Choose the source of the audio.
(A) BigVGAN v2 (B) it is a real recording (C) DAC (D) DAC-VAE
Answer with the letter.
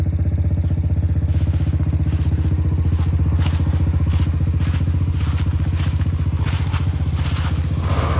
B